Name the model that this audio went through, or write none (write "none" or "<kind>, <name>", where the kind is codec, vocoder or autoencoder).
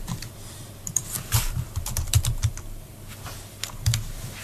vocoder, BigVGAN v2